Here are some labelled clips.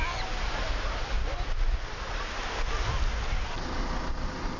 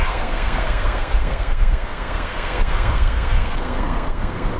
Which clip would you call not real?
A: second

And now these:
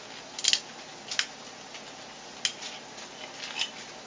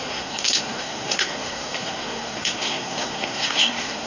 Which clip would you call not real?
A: second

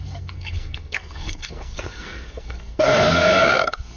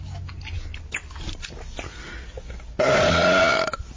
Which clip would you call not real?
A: first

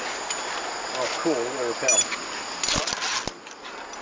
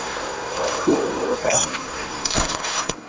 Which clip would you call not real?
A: second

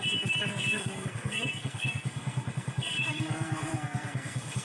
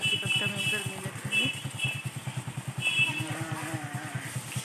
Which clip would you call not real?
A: first